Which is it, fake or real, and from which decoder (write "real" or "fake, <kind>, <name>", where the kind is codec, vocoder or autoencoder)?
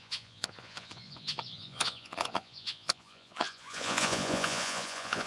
fake, vocoder, Vocos